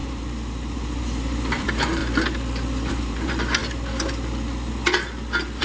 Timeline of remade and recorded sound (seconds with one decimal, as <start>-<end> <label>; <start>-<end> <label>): 0.0-2.0 remade; 2.0-2.9 recorded; 2.9-3.6 remade; 3.6-5.6 recorded